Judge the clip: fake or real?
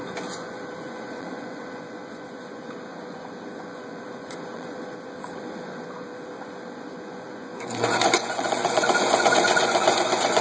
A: fake